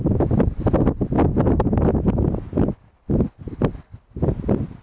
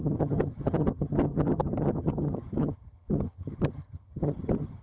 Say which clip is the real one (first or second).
first